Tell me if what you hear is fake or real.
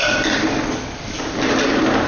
real